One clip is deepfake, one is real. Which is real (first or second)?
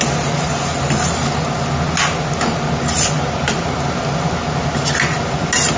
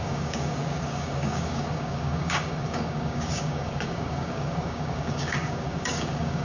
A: first